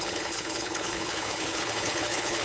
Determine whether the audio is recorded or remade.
remade